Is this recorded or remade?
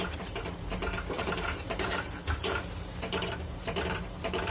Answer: remade